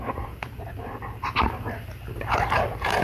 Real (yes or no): yes